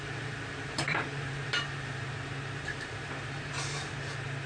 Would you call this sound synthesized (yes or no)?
yes